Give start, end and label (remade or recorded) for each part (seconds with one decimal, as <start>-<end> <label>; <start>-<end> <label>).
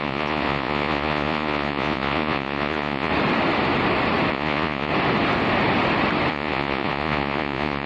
0.0-3.1 remade; 3.1-4.3 recorded; 4.3-4.9 remade; 4.9-6.3 recorded; 6.3-7.9 remade